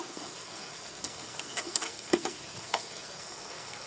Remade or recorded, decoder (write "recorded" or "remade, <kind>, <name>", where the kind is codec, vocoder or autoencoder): remade, codec, SNAC